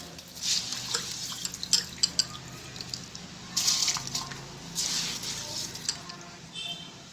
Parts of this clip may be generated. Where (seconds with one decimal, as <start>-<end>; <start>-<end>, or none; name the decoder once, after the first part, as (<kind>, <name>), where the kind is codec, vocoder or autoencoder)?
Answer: none